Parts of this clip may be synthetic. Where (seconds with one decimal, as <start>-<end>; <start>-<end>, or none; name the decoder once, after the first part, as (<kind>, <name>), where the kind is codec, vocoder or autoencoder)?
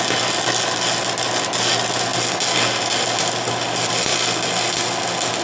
none